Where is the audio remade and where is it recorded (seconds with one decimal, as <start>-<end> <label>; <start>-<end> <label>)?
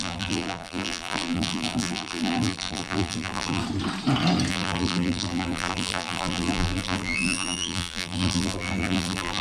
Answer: 0.0-3.6 remade; 3.6-4.5 recorded; 4.5-9.4 remade